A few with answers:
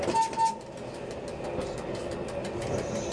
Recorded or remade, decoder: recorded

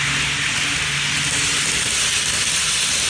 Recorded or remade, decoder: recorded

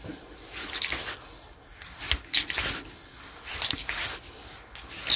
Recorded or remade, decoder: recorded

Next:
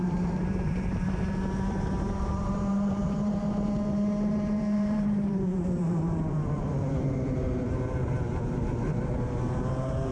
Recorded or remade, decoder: remade, vocoder, BigVGAN v2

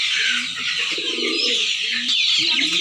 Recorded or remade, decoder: recorded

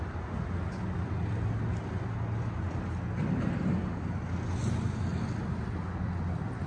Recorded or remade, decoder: recorded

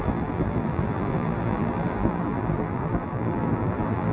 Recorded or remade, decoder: remade, vocoder, BigVGAN v2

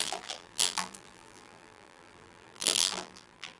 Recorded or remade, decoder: remade, vocoder, BigVGAN v2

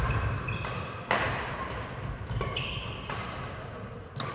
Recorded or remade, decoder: recorded